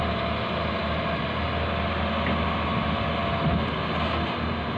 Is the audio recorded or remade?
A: recorded